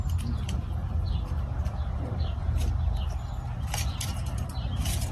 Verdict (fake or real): fake